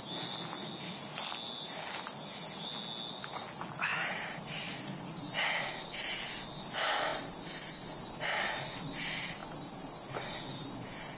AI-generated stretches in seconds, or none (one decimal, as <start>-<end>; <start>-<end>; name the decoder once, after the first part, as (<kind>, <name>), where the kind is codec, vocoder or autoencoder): 7.1-7.7 (vocoder, BigVGAN v2); 9.4-10.4